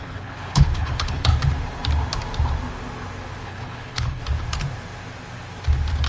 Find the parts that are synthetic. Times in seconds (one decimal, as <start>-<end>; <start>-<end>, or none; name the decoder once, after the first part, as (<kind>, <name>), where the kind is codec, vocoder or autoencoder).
0.0-1.3 (codec, HILCodec); 3.4-4.2